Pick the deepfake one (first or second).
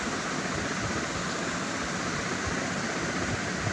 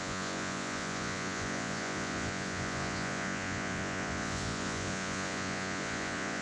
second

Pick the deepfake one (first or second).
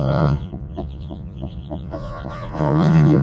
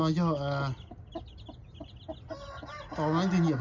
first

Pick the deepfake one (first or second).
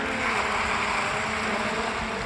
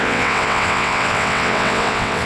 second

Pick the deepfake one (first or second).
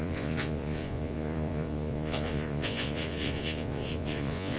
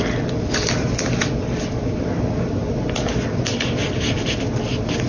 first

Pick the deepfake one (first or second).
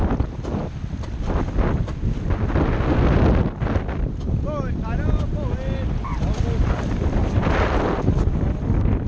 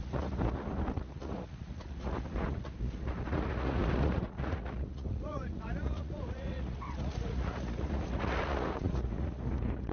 second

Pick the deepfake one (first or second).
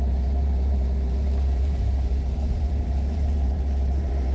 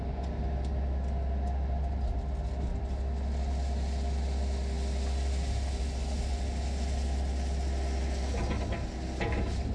first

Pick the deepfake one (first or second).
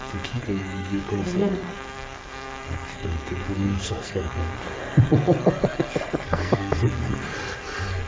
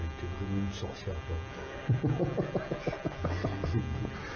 first